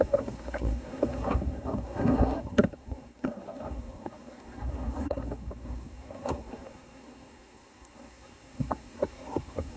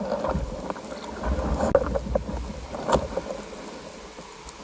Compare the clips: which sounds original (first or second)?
second